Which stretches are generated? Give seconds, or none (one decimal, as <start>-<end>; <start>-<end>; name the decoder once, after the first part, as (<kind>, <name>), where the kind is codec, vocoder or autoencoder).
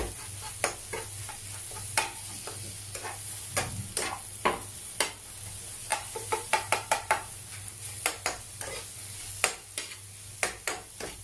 5.9-7.3 (vocoder, BigVGAN v2)